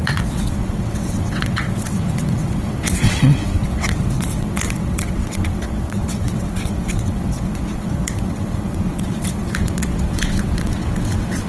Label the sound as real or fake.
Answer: fake